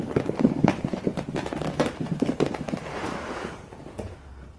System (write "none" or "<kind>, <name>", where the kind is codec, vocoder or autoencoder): vocoder, BigVGAN v2